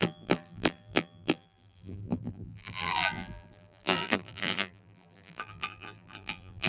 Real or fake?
fake